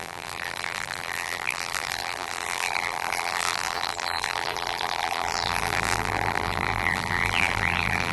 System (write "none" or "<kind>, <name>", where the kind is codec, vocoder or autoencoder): vocoder, BigVGAN v2